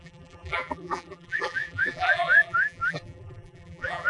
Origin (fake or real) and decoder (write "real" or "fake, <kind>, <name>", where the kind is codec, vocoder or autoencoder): fake, vocoder, BigVGAN v2